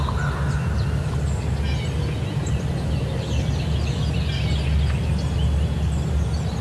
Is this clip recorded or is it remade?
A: recorded